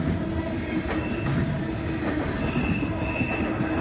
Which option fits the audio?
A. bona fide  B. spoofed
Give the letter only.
A